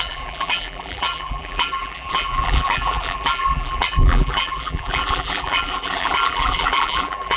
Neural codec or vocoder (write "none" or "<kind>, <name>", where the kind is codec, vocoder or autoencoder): vocoder, BigVGAN v2